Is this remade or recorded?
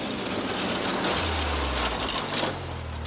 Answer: recorded